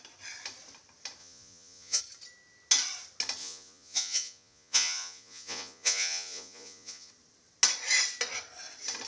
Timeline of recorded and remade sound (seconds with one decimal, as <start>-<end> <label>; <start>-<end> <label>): 0.0-1.2 recorded; 1.2-2.0 remade; 2.0-3.4 recorded; 3.4-7.1 remade; 7.1-9.1 recorded